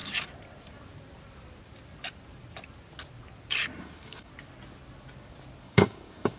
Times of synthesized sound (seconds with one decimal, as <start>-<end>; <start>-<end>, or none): 3.8-4.3; 5.6-6.4